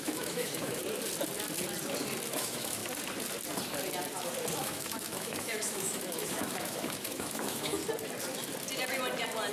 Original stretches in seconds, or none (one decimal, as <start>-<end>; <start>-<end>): 0.8-2.3; 2.8-4.6; 7.8-9.5